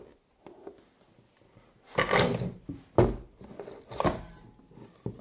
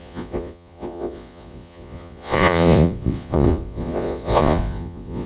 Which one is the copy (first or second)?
second